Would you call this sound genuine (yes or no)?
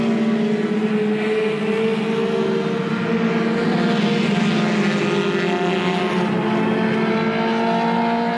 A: yes